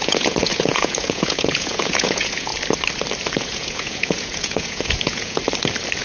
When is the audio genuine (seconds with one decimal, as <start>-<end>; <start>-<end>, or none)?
2.5-3.3; 5.4-6.0